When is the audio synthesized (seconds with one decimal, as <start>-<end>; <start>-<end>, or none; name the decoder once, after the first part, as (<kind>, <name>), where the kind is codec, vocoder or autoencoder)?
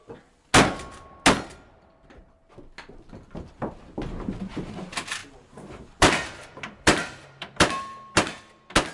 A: 5.2-8.4 (vocoder, BigVGAN v2)